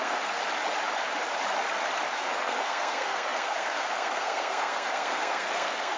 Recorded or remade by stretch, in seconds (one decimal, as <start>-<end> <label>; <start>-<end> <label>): 0.0-0.4 remade; 0.4-2.4 recorded; 2.4-6.0 remade